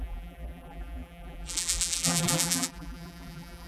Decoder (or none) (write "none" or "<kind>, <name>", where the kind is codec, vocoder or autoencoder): vocoder, BigVGAN v2